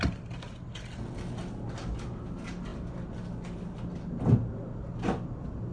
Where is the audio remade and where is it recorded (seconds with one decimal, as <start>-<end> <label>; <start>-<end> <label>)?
0.0-5.7 recorded